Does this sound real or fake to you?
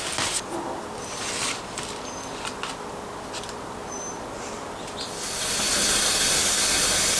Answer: real